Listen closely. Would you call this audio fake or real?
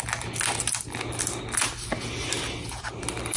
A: real